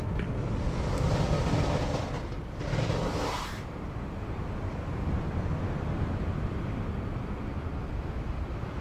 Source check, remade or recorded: recorded